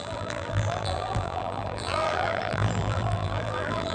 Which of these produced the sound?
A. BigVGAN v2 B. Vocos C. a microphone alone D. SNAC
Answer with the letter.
A